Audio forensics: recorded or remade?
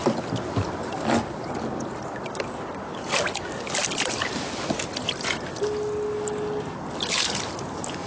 recorded